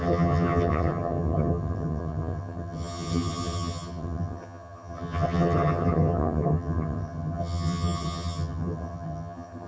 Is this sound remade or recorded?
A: remade